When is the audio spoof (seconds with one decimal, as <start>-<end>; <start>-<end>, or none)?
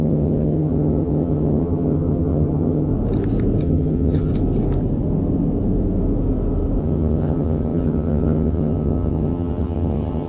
0.0-2.9; 3.6-4.3; 6.8-10.3